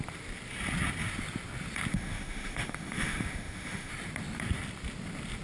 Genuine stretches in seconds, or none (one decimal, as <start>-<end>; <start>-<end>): 0.0-1.9; 3.9-5.4